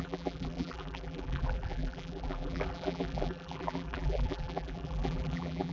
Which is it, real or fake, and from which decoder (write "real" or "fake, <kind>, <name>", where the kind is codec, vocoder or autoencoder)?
fake, vocoder, BigVGAN v2